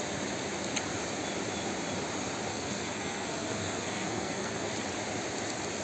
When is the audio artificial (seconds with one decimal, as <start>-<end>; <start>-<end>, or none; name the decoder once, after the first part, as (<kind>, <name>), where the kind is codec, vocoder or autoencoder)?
2.5-4.7 (codec, SNAC)